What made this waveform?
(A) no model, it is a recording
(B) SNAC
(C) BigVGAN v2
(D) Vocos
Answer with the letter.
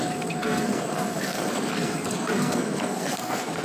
B